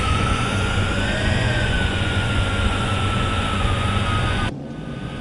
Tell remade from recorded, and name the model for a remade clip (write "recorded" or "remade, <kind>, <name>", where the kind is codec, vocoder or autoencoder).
remade, vocoder, Vocos